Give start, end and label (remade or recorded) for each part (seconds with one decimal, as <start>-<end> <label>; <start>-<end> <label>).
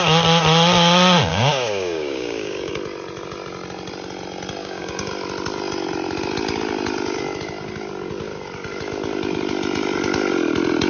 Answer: 0.0-1.3 recorded; 1.3-2.7 remade; 2.7-4.6 recorded; 4.6-5.1 remade; 5.1-10.9 recorded